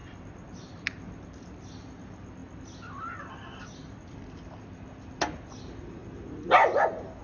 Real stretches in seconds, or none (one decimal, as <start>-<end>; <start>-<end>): 0.0-3.8; 4.6-7.2